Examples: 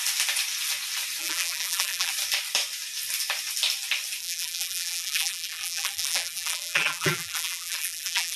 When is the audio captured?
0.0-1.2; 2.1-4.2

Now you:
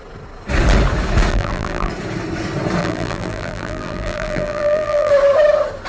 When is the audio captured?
0.0-1.3; 1.9-2.8; 5.1-5.9

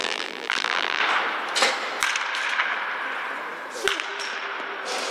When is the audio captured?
1.0-5.1